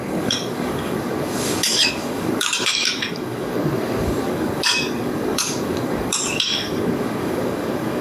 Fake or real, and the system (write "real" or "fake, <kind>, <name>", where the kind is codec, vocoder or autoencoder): fake, codec, DAC